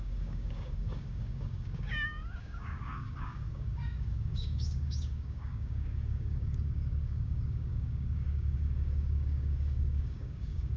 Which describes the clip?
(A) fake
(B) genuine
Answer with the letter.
A